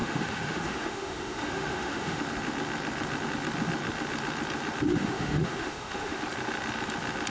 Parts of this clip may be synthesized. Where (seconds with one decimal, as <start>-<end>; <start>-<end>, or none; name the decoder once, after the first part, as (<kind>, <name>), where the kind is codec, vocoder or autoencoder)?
0.0-2.2 (autoencoder, DAC-VAE); 4.9-6.2